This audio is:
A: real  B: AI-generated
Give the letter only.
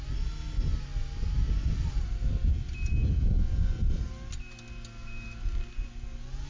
A